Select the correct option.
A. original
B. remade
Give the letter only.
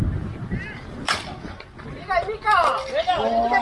A